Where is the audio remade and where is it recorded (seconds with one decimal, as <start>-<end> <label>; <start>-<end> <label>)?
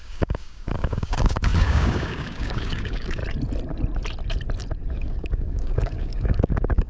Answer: 0.0-3.2 remade; 3.2-4.9 recorded; 4.9-6.9 remade